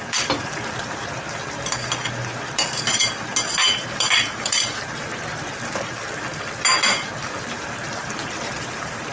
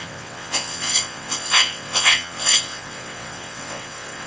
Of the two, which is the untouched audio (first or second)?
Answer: first